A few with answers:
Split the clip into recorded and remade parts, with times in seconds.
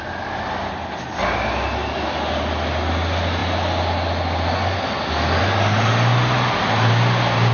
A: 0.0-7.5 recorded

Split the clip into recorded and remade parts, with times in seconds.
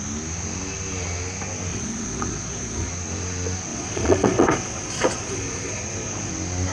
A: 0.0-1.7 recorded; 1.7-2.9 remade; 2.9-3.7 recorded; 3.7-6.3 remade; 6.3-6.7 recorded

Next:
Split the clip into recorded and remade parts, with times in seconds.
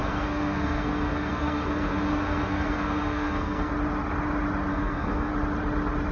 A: 0.0-3.7 remade; 3.7-4.7 recorded; 4.7-5.3 remade; 5.3-6.1 recorded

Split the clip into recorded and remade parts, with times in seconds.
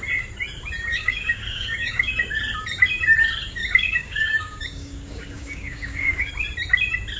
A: 0.0-0.9 recorded; 0.9-2.1 remade; 2.1-3.6 recorded; 3.6-6.3 remade; 6.3-7.2 recorded